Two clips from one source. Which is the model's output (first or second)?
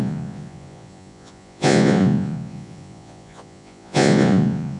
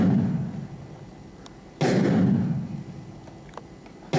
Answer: first